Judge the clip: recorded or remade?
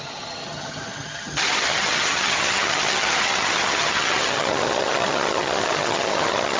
remade